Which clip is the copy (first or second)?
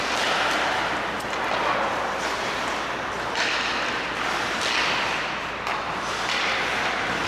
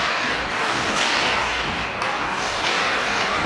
second